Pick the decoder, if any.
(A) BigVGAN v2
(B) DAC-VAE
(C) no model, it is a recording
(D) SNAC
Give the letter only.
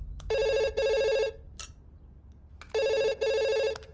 C